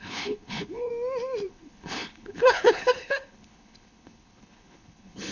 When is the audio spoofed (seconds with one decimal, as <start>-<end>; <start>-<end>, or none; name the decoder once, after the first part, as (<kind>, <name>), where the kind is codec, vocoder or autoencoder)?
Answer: 0.0-0.9 (codec, HILCodec); 1.5-5.3